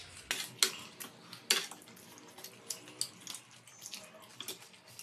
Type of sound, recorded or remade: recorded